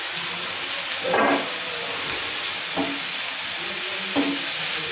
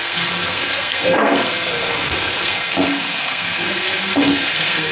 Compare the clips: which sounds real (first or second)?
first